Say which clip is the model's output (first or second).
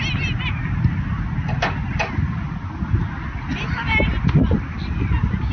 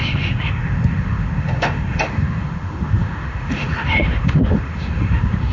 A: second